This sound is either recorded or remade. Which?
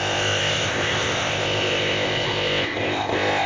remade